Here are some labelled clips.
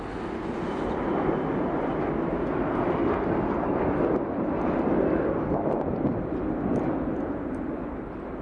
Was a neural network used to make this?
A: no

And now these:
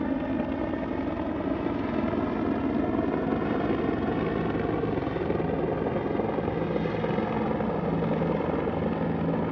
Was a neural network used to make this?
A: no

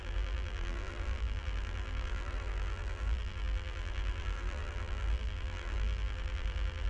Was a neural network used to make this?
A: yes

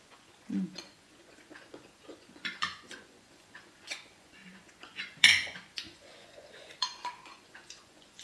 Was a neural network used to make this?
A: yes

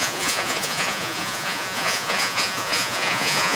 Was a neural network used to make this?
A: yes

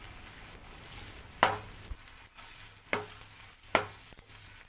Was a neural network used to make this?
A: no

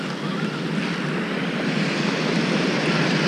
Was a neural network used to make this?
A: no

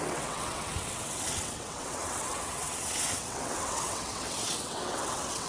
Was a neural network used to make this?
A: yes